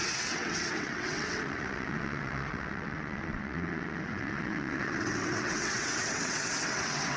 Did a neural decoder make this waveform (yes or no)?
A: yes